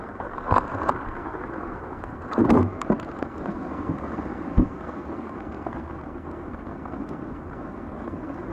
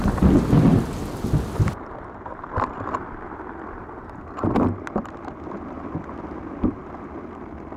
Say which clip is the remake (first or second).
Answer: first